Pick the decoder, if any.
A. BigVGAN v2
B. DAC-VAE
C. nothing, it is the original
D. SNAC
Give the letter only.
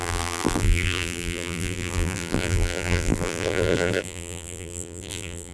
A